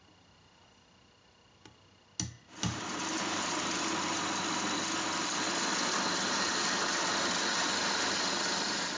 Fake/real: real